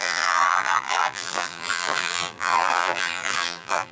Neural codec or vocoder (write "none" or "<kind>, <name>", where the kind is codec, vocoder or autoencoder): vocoder, BigVGAN v2